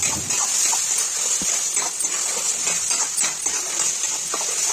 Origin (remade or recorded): recorded